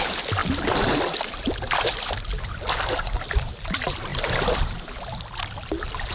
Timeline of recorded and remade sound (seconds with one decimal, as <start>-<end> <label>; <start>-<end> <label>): 0.0-0.4 recorded; 0.4-2.1 remade; 2.1-4.1 recorded; 4.1-4.6 remade; 4.6-6.1 recorded